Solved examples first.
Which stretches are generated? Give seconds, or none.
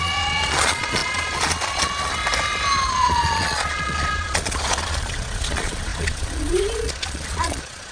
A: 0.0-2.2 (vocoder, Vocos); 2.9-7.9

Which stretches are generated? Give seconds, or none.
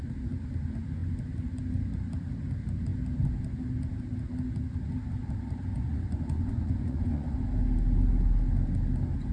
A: 5.7-7.4 (vocoder, Vocos)